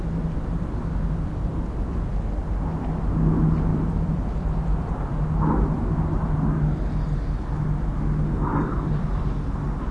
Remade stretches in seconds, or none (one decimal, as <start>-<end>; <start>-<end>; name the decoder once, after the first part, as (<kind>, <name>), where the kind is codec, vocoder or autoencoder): 3.7-4.9 (vocoder, BigVGAN v2); 8.5-9.2

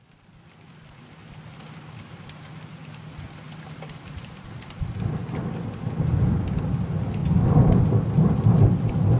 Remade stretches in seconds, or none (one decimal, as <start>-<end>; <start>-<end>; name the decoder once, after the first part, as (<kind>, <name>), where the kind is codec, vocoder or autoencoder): 7.2-7.8 (vocoder, BigVGAN v2)

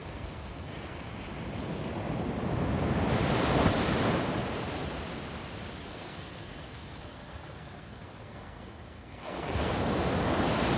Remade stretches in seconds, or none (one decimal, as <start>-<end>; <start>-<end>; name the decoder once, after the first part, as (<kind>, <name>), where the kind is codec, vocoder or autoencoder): 0.0-1.1 (codec, SNAC); 5.8-9.7